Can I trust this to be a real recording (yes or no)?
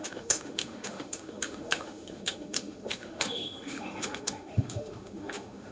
no